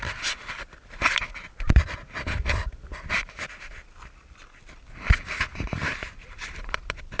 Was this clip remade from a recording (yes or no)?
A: yes